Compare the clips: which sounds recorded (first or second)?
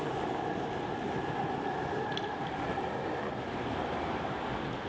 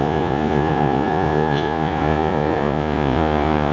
first